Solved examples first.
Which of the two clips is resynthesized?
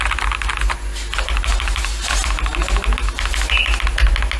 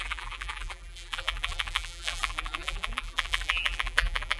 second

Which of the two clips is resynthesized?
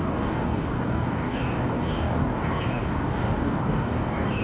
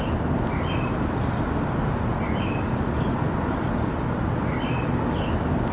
first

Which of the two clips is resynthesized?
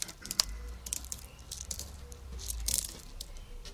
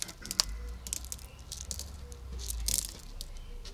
first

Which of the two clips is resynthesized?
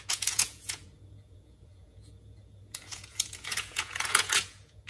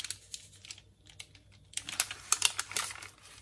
first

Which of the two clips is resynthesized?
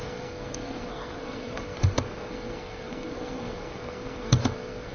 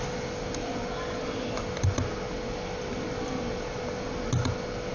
first